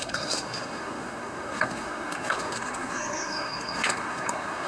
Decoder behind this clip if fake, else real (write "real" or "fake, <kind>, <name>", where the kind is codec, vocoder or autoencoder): fake, codec, SNAC